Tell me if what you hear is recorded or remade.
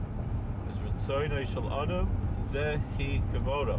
recorded